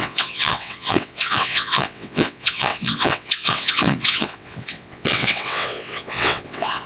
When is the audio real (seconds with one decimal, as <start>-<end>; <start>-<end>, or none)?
none

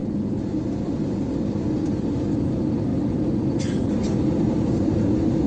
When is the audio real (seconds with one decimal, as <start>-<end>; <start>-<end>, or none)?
0.0-5.5

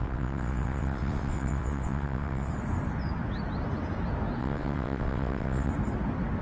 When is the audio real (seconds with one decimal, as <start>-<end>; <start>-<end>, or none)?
2.5-4.4; 5.7-6.4

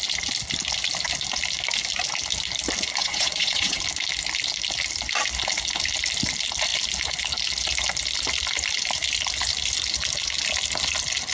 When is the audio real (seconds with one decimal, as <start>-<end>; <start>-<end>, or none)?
0.0-3.0; 3.8-11.3

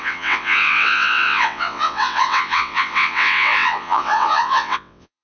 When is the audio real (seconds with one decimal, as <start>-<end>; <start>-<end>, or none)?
none